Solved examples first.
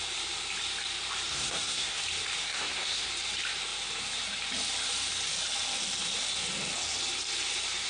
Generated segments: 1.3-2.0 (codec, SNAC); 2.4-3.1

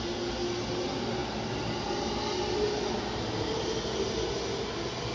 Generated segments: none

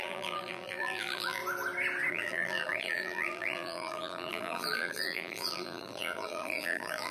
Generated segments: 0.0-1.4 (vocoder, BigVGAN v2); 2.1-7.1

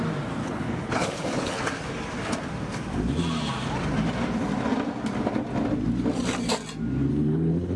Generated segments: 0.4-1.6 (codec, HILCodec); 7.1-7.8